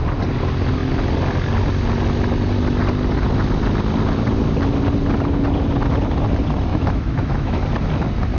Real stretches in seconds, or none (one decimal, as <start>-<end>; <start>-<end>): 0.0-6.7; 7.6-8.4